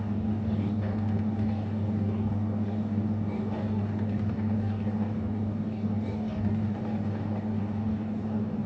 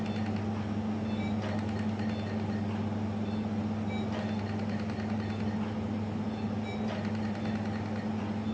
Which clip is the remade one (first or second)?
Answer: first